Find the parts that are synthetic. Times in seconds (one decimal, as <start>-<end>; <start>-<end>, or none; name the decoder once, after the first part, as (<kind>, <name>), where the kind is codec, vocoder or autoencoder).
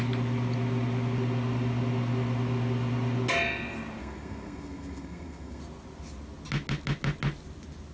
4.0-5.6 (codec, SNAC)